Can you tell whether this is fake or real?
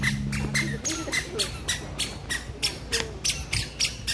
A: real